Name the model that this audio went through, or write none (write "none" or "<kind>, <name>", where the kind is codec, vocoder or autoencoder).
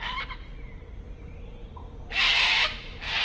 none